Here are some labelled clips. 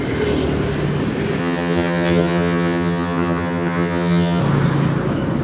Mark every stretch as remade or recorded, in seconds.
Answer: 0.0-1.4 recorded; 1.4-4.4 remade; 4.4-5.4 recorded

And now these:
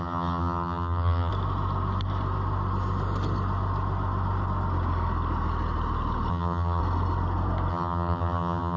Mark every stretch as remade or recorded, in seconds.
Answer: 0.0-1.3 remade; 1.3-6.3 recorded; 6.3-6.8 remade; 6.8-7.7 recorded; 7.7-8.8 remade

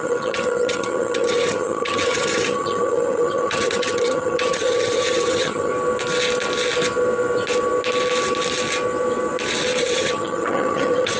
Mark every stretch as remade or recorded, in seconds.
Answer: 0.0-5.7 remade; 5.7-9.8 recorded; 9.8-11.2 remade

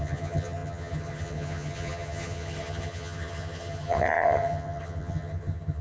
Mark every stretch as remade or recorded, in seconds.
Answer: 0.0-5.8 remade

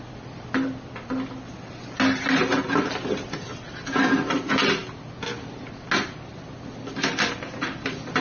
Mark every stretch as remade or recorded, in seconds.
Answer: 0.0-8.2 recorded

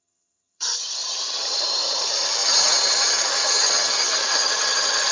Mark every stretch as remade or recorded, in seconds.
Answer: 0.0-5.1 remade